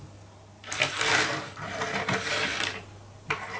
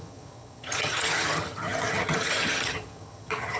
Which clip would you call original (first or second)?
first